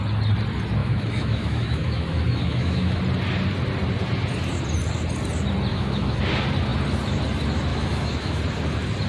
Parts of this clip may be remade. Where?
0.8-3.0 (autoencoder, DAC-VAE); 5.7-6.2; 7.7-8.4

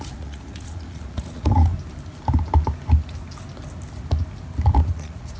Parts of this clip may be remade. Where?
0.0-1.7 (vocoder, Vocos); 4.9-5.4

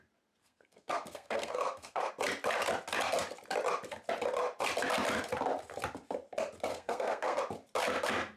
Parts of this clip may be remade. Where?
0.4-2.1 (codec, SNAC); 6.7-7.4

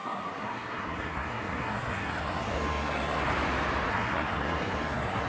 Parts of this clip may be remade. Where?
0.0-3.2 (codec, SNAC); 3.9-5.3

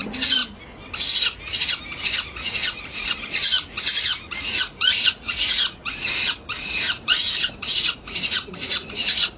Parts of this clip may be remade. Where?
0.0-0.4 (vocoder, Vocos); 2.0-9.4